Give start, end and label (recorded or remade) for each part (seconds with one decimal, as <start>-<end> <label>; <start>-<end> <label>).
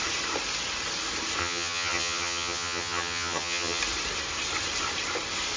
0.0-1.4 recorded; 1.4-3.8 remade; 3.8-5.6 recorded